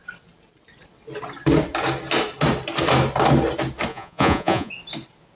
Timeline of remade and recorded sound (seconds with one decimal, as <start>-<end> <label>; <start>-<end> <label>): 0.0-3.9 recorded; 3.9-4.7 remade; 4.7-5.4 recorded